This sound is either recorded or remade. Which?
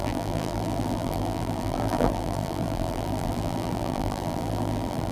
remade